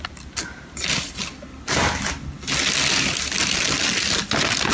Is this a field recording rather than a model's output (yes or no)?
yes